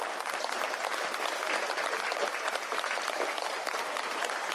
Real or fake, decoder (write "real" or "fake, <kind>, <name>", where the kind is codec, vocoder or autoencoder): fake, vocoder, BigVGAN v2